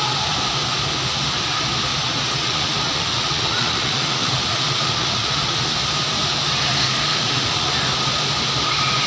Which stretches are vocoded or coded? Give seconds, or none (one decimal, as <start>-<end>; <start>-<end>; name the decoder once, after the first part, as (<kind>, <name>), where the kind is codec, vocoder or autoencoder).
1.9-5.7 (vocoder, Vocos); 7.1-7.7